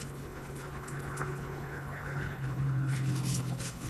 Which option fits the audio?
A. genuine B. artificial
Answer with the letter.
B